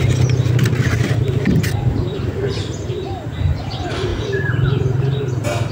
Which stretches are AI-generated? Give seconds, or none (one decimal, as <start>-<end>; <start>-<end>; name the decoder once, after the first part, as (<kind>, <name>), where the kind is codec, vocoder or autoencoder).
none